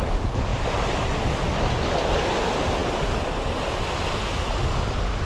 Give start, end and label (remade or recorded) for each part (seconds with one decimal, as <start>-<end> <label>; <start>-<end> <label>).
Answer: 0.0-5.3 recorded